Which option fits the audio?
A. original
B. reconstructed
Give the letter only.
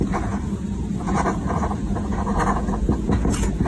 B